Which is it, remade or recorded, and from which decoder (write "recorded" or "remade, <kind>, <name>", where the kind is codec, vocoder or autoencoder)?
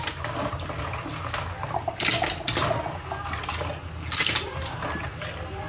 recorded